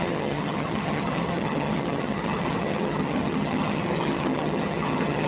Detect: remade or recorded remade